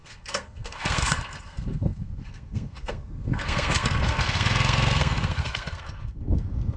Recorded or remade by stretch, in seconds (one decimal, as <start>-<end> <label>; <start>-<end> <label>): 0.0-6.8 remade